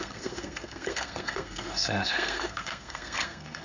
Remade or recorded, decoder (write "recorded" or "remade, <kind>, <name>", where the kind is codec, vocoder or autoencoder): remade, codec, SNAC